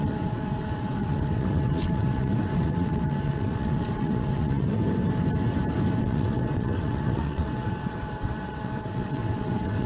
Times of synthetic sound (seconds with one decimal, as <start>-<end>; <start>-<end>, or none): 0.0-4.8; 6.0-9.9